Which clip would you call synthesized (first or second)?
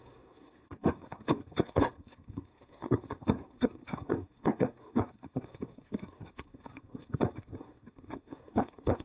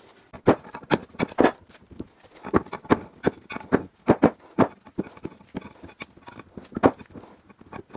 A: first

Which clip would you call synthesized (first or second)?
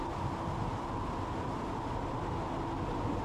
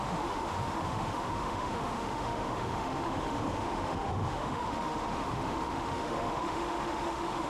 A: second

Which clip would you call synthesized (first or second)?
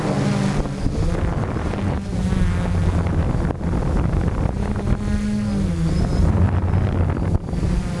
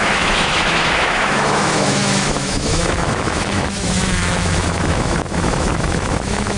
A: second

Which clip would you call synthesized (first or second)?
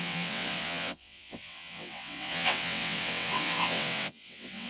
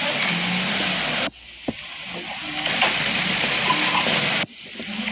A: first